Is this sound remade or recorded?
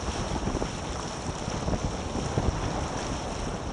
recorded